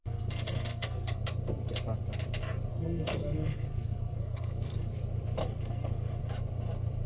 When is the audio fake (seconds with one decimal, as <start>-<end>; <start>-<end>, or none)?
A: 0.0-1.2; 2.7-4.9; 5.4-6.2